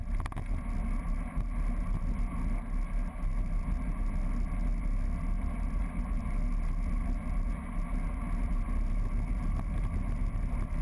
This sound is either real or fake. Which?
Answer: real